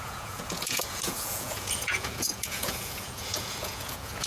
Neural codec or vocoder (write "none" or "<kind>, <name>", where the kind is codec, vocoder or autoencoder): vocoder, Vocos